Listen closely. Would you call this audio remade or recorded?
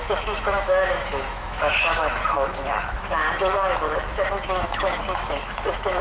remade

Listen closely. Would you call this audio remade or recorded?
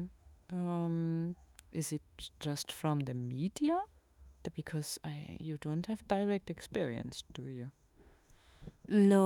remade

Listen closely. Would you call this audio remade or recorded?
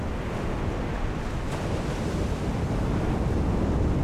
recorded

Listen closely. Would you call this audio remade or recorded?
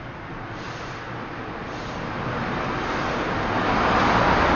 recorded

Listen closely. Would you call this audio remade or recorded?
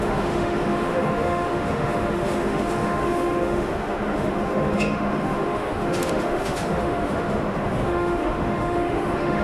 remade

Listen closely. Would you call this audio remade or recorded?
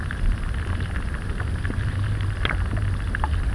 recorded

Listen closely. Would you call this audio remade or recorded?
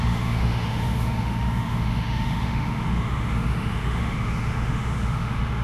remade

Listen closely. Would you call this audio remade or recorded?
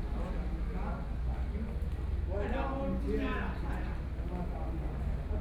recorded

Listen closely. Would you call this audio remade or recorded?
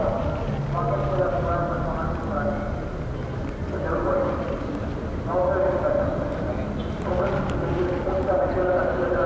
recorded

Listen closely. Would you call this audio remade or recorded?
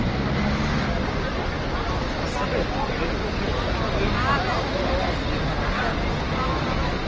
recorded